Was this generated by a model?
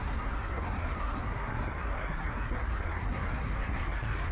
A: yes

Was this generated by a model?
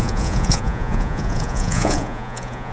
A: yes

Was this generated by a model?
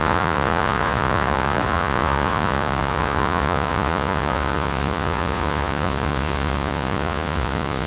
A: yes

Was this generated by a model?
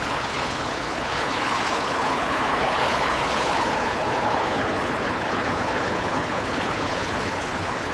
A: yes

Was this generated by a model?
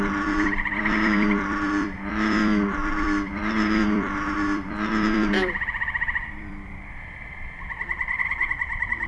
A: yes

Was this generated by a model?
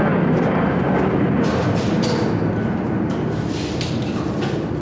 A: no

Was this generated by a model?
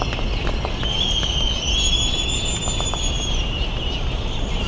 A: no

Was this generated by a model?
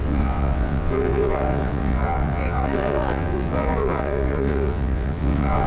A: yes